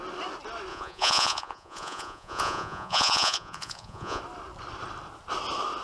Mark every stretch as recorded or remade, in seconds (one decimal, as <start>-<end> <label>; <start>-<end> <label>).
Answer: 0.0-0.7 recorded; 0.7-4.2 remade; 4.2-5.8 recorded